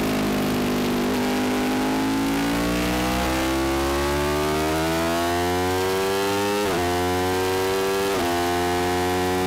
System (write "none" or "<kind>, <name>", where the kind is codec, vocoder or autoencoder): none